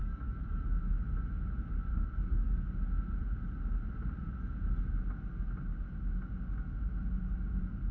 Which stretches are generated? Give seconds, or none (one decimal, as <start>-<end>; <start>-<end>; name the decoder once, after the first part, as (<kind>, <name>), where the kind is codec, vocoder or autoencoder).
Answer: 0.0-0.8 (codec, DAC); 1.9-2.7